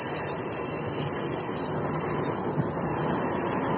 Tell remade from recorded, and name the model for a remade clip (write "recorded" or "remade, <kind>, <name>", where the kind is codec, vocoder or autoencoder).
remade, vocoder, BigVGAN v2